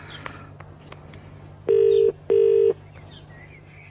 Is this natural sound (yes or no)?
yes